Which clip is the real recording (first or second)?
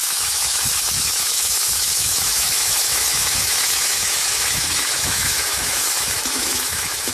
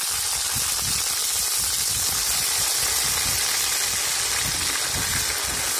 second